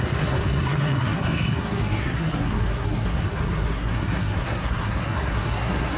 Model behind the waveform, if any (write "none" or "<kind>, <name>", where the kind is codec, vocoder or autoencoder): codec, SNAC